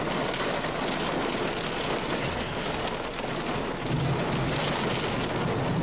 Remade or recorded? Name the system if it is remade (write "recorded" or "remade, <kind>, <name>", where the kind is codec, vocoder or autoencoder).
recorded